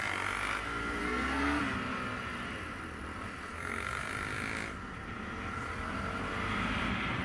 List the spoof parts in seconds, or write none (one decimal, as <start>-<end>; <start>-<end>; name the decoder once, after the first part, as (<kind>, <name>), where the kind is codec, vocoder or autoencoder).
1.0-1.6 (codec, SNAC); 3.5-4.1